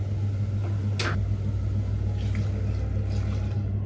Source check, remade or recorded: recorded